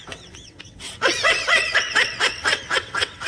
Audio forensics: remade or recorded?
remade